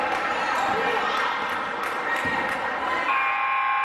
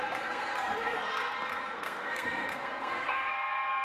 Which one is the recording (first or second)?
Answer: first